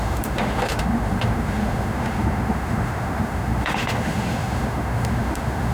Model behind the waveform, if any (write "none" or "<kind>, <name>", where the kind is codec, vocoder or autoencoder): autoencoder, DAC-VAE